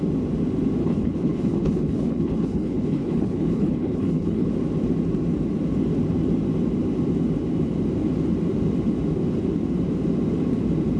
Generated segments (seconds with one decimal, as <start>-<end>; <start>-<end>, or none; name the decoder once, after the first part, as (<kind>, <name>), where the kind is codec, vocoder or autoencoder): 0.8-4.5 (codec, HILCodec)